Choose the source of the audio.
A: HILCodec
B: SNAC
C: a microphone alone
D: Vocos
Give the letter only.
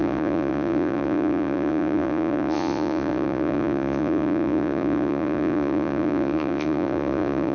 D